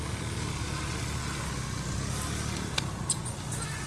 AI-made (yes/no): no